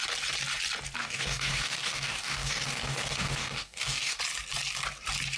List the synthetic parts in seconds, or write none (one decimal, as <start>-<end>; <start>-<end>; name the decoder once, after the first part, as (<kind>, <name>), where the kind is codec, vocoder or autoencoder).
1.0-4.2 (codec, DAC)